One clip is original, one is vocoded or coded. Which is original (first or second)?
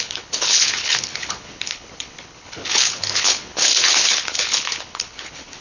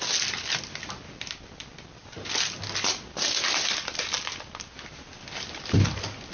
second